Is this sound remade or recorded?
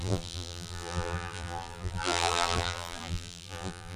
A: remade